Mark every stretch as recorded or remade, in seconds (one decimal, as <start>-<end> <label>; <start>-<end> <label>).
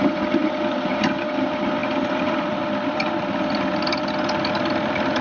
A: 0.0-0.4 recorded; 0.4-0.9 remade; 0.9-1.8 recorded; 1.8-5.2 remade